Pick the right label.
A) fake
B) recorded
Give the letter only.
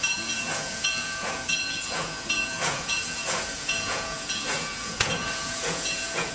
A